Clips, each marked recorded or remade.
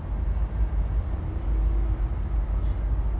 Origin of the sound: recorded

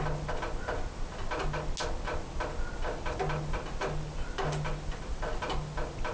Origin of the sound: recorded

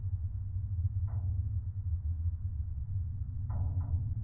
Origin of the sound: recorded